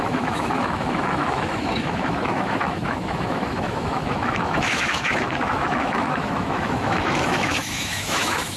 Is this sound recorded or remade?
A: remade